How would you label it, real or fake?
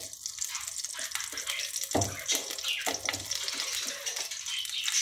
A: real